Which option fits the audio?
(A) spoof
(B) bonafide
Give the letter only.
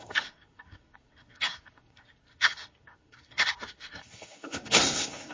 A